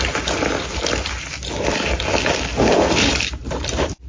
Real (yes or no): no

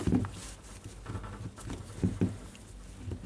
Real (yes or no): yes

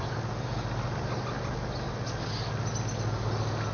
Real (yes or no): yes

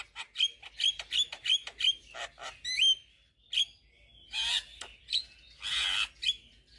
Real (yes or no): yes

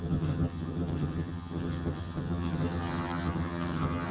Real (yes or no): no